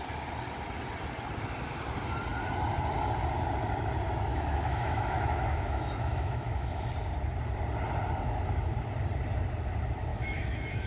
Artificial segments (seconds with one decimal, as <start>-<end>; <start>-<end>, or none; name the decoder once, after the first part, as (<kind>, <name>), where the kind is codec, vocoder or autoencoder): 4.3-6.9 (autoencoder, DAC-VAE); 10.1-10.9

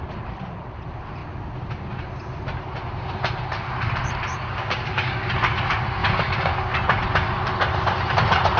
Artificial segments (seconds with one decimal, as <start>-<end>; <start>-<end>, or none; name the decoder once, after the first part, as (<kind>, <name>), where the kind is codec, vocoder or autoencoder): 4.3-5.3 (codec, DAC); 6.0-6.7

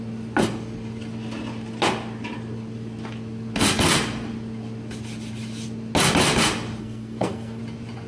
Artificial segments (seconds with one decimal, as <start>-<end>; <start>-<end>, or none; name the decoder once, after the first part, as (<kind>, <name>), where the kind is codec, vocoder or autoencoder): 6.8-7.6 (codec, SNAC)

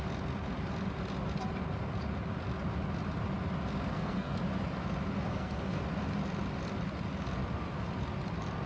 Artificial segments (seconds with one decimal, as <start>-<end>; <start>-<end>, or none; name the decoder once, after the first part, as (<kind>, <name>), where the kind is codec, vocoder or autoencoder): 3.9-4.4 (codec, SNAC); 5.3-5.8

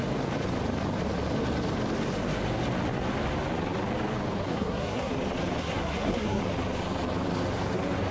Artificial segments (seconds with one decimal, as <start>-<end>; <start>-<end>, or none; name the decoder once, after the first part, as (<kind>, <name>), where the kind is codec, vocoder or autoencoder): 4.5-5.1 (codec, SNAC); 5.6-6.4